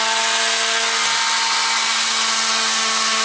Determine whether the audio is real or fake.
real